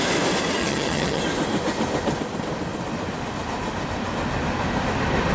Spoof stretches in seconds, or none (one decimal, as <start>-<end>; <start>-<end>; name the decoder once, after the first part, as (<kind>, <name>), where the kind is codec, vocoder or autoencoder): 0.6-1.2 (vocoder, HiFi-GAN)